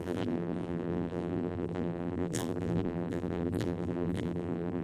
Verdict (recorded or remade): remade